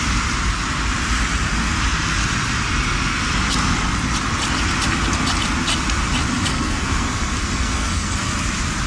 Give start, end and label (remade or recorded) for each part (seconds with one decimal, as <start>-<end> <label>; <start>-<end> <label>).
0.0-6.5 recorded; 6.5-8.3 remade; 8.3-8.9 recorded